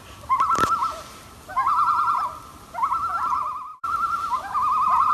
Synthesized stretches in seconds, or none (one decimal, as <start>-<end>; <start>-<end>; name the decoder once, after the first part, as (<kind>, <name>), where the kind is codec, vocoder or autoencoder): 3.7-5.1 (vocoder, BigVGAN v2)